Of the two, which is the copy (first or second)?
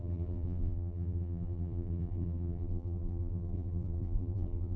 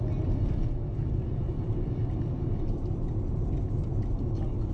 first